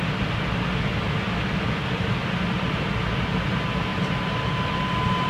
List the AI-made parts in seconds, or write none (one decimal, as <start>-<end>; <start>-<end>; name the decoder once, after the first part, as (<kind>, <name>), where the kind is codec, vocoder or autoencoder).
3.9-4.7 (vocoder, BigVGAN v2)

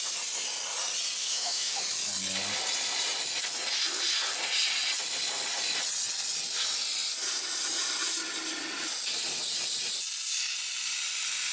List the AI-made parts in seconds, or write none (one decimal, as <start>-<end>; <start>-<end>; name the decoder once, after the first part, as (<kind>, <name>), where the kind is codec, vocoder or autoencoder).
1.2-1.8 (autoencoder, DAC-VAE)

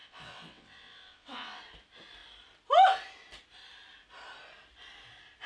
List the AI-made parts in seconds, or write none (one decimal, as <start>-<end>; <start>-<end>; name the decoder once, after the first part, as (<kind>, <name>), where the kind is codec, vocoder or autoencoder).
0.0-1.6 (vocoder, WaveNeXt)

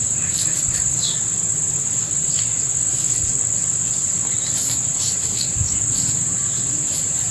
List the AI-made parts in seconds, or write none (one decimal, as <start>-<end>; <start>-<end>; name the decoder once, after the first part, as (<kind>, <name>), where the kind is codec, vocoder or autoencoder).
none

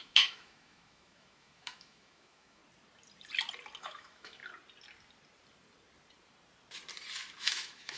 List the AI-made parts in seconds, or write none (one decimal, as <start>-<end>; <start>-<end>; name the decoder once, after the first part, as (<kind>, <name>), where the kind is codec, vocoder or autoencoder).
0.0-2.6 (autoencoder, DAC-VAE); 3.8-4.4; 7.4-8.0

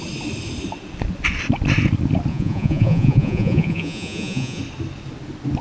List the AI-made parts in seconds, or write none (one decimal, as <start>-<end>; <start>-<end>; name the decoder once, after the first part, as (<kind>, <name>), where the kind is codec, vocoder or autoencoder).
2.3-4.6 (vocoder, Vocos)

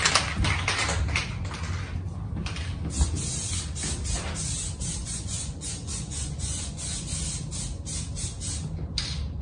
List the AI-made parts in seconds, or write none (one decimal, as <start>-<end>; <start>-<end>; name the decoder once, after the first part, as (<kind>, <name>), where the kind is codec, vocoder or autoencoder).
5.0-7.1 (vocoder, Vocos)